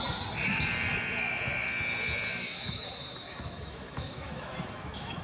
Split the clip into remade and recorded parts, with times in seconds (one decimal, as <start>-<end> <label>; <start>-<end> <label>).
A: 0.0-2.3 recorded; 2.3-5.2 remade